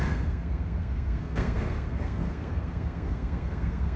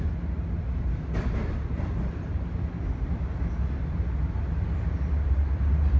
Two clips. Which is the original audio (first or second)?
second